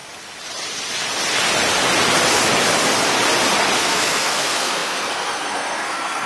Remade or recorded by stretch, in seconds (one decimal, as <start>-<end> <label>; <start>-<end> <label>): 0.0-3.8 recorded; 3.8-6.3 remade